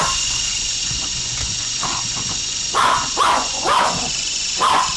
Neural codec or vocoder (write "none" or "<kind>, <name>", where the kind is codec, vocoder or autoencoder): vocoder, Vocos